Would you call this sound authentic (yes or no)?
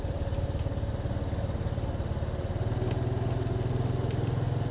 yes